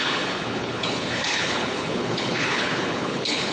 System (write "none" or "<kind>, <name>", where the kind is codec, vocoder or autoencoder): codec, HILCodec